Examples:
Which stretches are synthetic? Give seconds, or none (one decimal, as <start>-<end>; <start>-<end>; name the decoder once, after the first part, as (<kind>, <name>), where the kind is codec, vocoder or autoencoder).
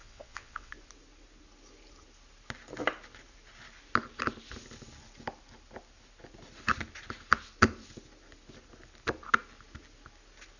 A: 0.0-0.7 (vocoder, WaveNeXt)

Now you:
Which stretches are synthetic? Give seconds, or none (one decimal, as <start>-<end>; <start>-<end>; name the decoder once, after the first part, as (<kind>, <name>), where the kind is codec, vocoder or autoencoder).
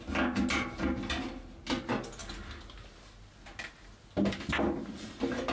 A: none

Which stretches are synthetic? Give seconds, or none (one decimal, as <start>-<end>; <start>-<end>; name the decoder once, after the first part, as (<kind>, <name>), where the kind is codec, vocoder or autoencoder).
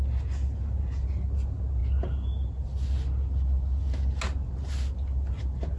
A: none